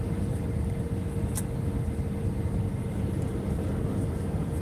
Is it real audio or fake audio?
real